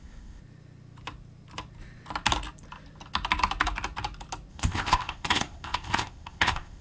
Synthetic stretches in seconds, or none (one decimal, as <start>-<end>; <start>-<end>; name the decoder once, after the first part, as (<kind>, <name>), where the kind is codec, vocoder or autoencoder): 0.0-0.4 (codec, ZipCodec); 4.5-6.8